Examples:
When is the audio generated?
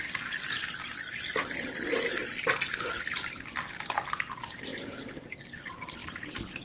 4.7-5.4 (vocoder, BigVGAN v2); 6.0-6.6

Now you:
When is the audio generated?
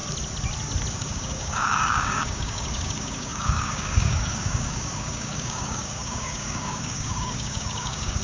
0.9-8.2 (codec, DAC)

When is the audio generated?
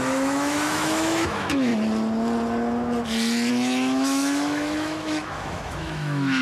0.0-1.7 (autoencoder, DAC-VAE); 3.5-6.4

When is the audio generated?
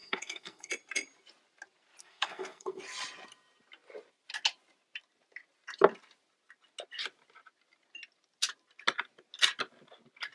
0.0-0.7 (codec, SNAC); 2.0-2.8